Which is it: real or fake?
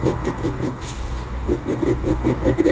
fake